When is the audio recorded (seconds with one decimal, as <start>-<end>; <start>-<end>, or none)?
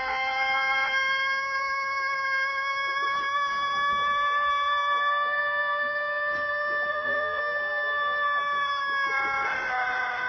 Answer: 0.0-6.9; 7.4-10.3